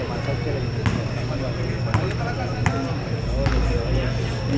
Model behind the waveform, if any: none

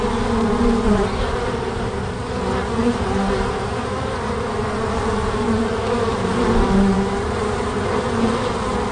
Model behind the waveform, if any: vocoder, BigVGAN v2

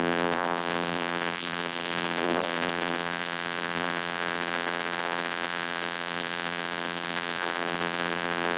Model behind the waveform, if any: vocoder, BigVGAN v2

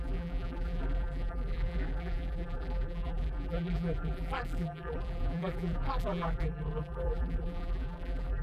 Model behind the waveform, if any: vocoder, BigVGAN v2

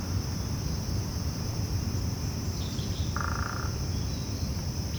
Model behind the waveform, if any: vocoder, BigVGAN v2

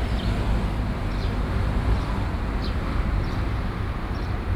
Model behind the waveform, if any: vocoder, BigVGAN v2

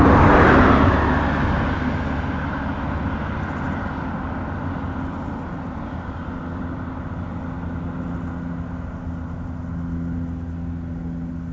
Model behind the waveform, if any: none